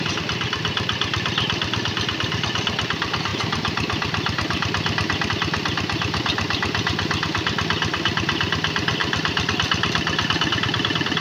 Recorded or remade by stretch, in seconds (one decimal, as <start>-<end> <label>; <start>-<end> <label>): 0.0-9.0 recorded; 9.0-9.5 remade; 9.5-11.2 recorded